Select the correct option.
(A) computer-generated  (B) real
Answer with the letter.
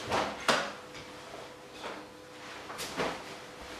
B